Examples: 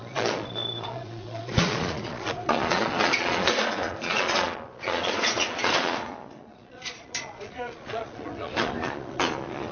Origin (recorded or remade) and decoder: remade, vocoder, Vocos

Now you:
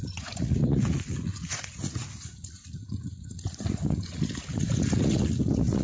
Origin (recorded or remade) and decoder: remade, vocoder, Vocos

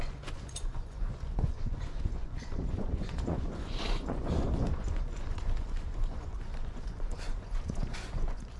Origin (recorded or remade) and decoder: remade, vocoder, Vocos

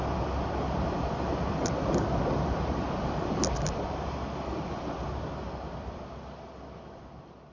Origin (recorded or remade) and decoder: recorded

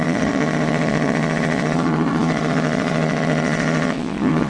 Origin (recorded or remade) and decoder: remade, vocoder, Vocos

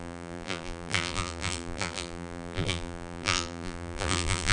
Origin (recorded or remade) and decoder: remade, vocoder, BigVGAN v2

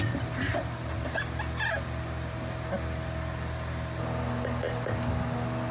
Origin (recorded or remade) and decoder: recorded